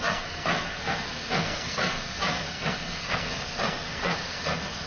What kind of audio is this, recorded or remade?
remade